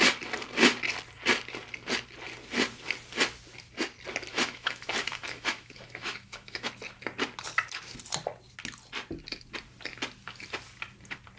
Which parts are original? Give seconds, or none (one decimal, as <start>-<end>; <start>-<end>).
0.0-4.3; 6.7-11.4